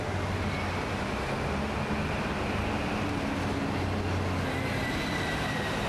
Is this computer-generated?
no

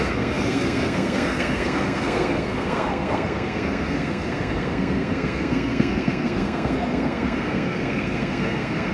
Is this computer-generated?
yes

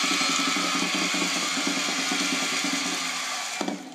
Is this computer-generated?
no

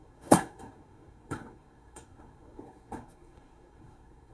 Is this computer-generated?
yes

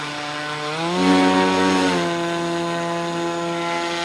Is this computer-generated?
no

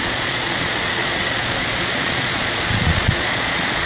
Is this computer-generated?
yes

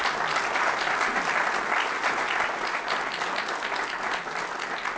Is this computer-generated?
no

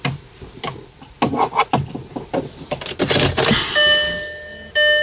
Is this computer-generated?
no